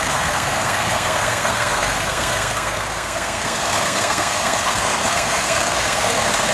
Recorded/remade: remade